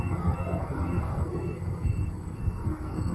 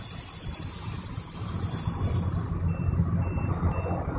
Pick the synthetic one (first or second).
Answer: first